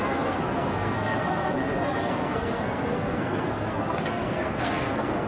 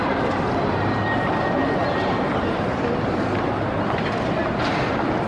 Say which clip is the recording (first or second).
second